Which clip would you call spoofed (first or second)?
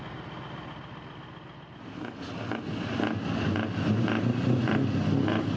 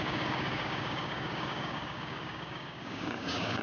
second